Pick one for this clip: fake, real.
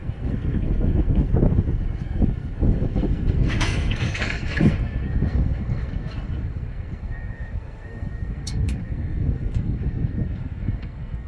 fake